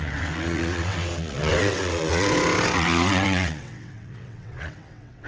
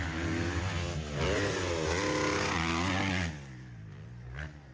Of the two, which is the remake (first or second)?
first